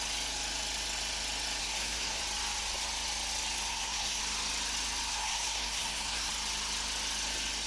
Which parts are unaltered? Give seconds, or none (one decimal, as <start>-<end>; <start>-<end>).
0.0-1.6; 2.2-3.7; 4.2-5.1; 6.3-7.7